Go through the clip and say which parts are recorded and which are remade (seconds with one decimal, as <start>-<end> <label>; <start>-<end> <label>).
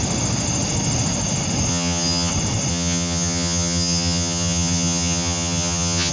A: 0.0-1.7 recorded; 1.7-2.3 remade; 2.3-2.7 recorded; 2.7-6.1 remade